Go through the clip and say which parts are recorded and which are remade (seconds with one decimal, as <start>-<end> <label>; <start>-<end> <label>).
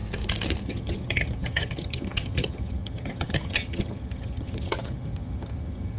0.0-0.6 recorded; 0.6-6.0 remade